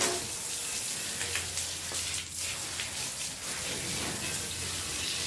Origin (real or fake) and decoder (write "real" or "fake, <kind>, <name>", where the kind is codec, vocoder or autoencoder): real